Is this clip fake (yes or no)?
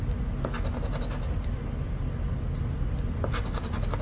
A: no